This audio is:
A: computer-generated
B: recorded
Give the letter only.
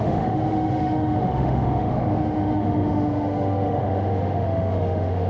A